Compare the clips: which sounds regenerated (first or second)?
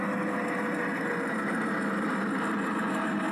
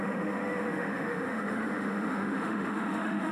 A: second